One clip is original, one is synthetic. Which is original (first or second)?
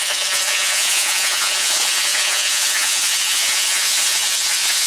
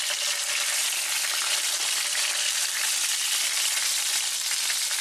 second